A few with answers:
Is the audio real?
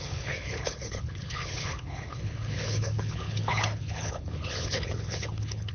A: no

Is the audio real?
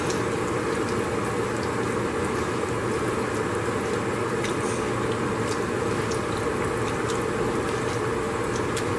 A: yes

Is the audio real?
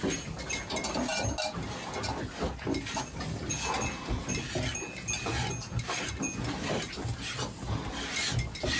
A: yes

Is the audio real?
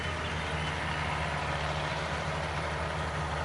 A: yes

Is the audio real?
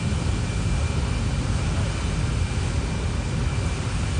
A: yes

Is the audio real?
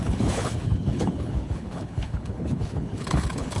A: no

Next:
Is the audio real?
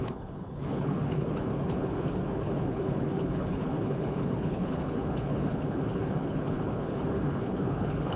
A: no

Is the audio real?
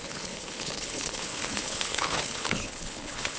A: no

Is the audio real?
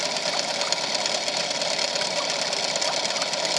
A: yes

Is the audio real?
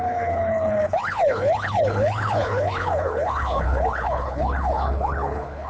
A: no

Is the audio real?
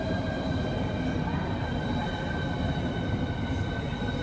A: yes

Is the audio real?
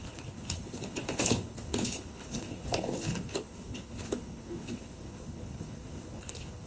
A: no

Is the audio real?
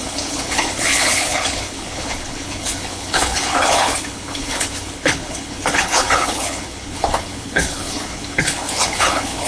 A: no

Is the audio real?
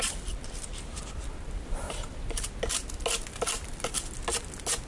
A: yes